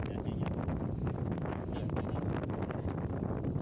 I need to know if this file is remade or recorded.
recorded